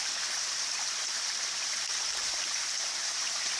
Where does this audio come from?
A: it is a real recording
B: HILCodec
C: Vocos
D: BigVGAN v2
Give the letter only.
D